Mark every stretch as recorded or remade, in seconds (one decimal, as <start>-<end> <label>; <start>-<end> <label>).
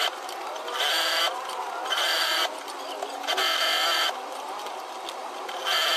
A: 0.0-6.0 recorded